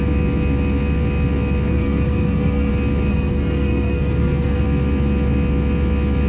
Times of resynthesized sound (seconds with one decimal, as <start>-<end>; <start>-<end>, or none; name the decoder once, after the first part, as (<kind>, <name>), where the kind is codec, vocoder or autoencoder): 1.7-2.7 (codec, SNAC); 3.1-4.6